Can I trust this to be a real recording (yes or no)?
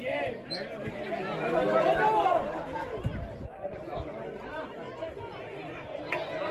yes